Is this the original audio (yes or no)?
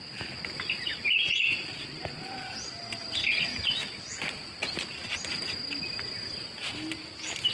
yes